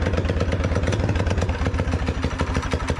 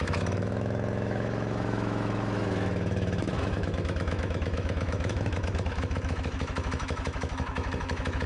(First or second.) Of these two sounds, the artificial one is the second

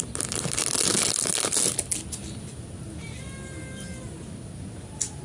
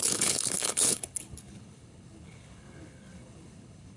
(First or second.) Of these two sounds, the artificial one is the second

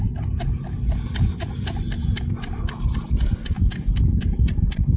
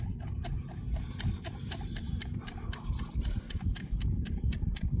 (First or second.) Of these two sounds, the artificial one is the second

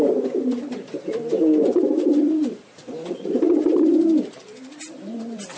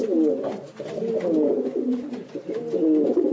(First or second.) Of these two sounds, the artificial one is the first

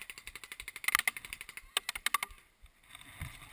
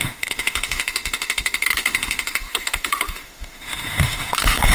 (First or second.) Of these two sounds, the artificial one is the second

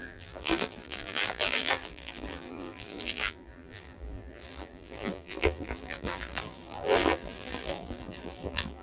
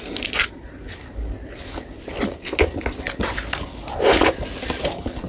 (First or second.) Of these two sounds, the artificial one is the first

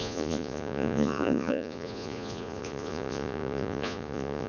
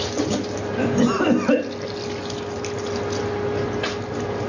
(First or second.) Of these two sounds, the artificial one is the first